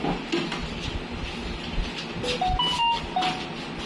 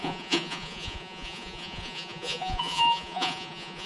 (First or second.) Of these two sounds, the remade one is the second